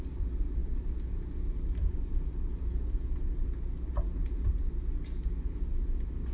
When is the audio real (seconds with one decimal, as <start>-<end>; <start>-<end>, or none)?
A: 0.0-6.3